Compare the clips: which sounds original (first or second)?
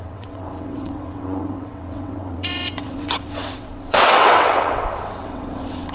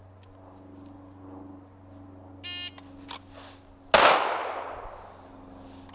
second